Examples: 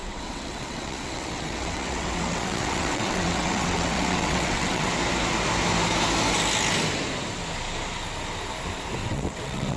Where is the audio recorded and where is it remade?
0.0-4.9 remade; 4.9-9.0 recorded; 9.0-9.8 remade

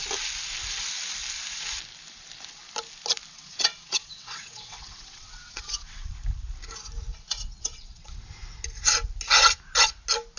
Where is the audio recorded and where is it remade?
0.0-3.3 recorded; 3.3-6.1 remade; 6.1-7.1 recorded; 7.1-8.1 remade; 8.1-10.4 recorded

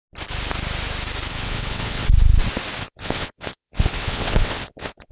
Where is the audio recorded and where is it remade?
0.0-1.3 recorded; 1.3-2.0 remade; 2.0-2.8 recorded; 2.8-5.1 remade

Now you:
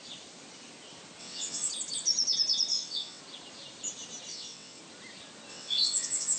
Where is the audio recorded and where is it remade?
0.0-1.2 recorded; 1.2-1.7 remade; 1.7-2.7 recorded; 2.7-3.2 remade; 3.2-4.3 recorded; 4.3-4.8 remade; 4.8-5.5 recorded; 5.5-6.4 remade

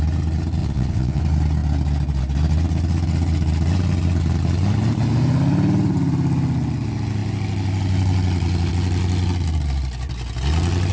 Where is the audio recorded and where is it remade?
0.0-0.6 recorded; 0.6-1.2 remade; 1.2-10.9 recorded

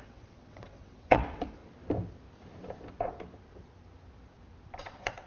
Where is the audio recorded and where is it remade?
0.0-1.6 remade; 1.6-4.8 recorded; 4.8-5.3 remade